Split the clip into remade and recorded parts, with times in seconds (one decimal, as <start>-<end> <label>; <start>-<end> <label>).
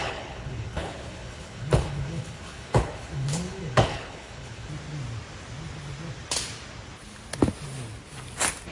0.0-4.7 remade; 4.7-8.7 recorded